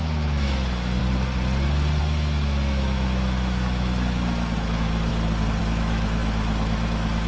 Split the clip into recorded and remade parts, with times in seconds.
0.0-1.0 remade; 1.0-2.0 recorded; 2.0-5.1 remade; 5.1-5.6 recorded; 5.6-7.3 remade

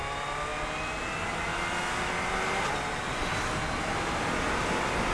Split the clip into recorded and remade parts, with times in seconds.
0.0-5.1 recorded

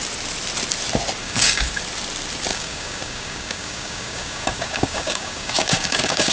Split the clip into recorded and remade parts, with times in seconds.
0.0-1.2 recorded; 1.2-1.8 remade; 1.8-2.5 recorded; 2.5-6.3 remade